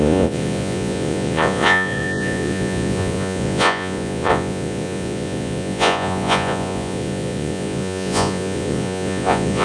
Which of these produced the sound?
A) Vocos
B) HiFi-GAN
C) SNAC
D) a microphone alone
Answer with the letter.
A